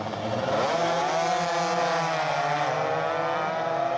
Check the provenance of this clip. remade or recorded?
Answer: recorded